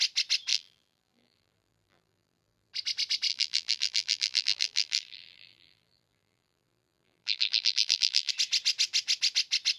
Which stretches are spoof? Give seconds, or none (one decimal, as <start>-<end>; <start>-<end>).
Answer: 0.5-2.7; 3.3-8.3